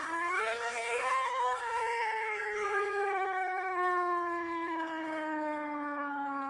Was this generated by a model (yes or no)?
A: yes